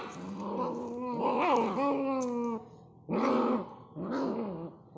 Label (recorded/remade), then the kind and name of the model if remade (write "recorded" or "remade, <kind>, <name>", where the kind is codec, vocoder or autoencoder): recorded